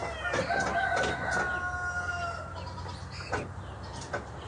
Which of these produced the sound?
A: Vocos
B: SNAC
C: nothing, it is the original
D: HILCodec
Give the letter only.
C